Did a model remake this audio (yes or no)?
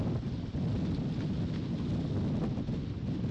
no